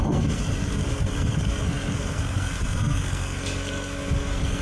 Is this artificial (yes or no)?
yes